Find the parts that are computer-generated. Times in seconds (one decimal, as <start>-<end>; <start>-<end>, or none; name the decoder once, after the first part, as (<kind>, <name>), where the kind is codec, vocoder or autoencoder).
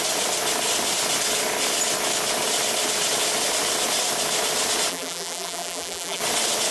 4.9-6.2 (vocoder, BigVGAN v2)